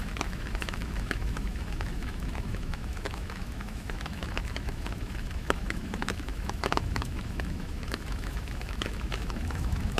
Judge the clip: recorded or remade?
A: remade